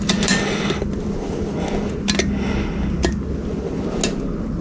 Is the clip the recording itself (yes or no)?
yes